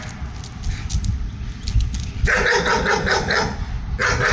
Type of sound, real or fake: real